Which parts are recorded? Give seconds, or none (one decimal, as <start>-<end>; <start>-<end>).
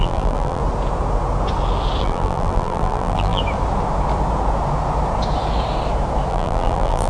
0.6-2.0; 3.4-6.3